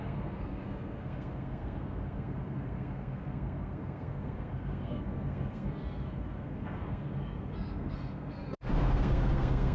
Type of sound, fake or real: fake